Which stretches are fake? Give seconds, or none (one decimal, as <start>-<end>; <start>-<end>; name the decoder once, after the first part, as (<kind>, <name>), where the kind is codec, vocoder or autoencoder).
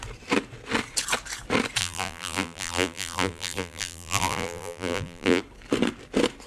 1.8-5.4 (vocoder, BigVGAN v2)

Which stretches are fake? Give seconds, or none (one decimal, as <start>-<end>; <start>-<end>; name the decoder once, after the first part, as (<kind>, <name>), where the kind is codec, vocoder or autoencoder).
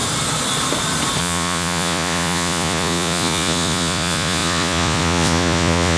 1.2-6.0 (vocoder, Vocos)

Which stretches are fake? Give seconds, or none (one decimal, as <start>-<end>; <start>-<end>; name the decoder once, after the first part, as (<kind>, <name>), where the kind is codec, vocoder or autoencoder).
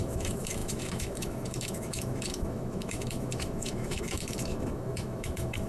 0.0-5.7 (autoencoder, DAC-VAE)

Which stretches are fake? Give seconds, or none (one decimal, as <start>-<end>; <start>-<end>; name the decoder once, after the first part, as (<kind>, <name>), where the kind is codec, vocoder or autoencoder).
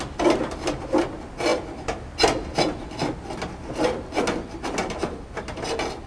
none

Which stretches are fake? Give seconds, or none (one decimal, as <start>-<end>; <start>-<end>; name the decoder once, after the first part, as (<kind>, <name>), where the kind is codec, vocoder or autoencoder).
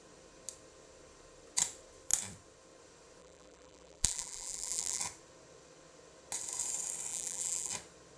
3.2-5.0 (vocoder, BigVGAN v2); 7.1-7.7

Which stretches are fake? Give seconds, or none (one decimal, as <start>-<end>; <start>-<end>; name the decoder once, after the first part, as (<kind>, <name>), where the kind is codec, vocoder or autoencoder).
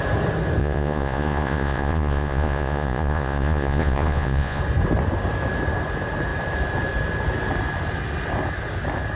0.6-4.6 (vocoder, Vocos)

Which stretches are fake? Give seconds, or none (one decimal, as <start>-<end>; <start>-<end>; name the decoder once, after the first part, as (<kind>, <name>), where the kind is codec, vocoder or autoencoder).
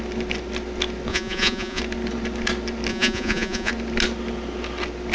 1.1-1.8 (vocoder, Vocos); 2.9-3.7